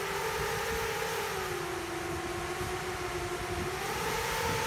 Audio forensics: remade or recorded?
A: recorded